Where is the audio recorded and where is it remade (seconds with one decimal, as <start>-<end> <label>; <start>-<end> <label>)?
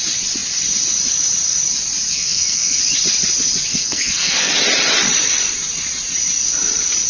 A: 0.0-2.1 recorded; 2.1-2.8 remade; 2.8-3.7 recorded; 3.7-4.5 remade; 4.5-7.1 recorded